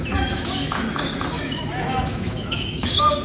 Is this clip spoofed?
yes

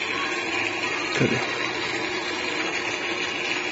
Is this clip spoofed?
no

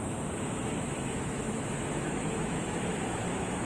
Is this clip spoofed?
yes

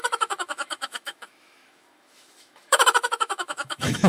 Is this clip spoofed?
yes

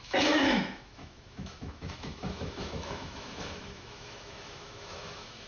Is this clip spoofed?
yes